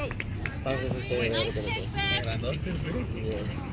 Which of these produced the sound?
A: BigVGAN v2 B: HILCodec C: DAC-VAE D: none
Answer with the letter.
D